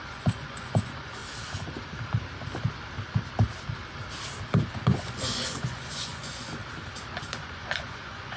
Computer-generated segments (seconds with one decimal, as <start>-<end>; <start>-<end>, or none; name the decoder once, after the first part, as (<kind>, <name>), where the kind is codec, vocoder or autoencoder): 0.0-1.2 (vocoder, Vocos); 4.7-6.6; 7.2-8.4